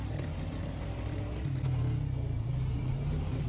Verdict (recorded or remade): recorded